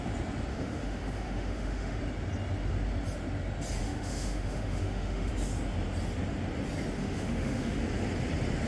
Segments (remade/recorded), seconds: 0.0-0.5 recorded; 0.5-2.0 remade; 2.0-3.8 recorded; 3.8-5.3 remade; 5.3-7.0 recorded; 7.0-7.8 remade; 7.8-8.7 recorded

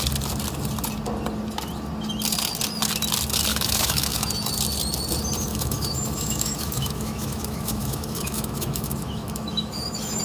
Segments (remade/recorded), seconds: 0.0-3.5 recorded; 3.5-4.3 remade; 4.3-5.5 recorded; 5.5-10.2 remade

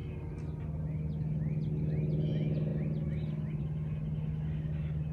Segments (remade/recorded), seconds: 0.0-5.1 recorded

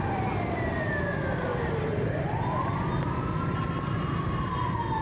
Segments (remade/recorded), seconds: 0.0-5.0 recorded

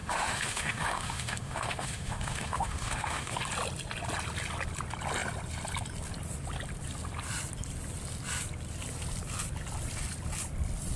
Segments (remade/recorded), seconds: 0.0-3.4 remade; 3.4-11.0 recorded

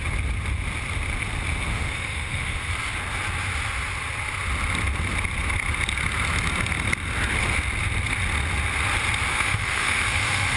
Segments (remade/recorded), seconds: 0.0-1.7 recorded; 1.7-2.7 remade; 2.7-9.3 recorded; 9.3-10.6 remade